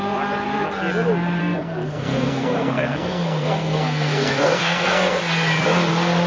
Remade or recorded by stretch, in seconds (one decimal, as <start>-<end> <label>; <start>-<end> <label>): 0.0-1.4 recorded; 1.4-5.2 remade; 5.2-6.3 recorded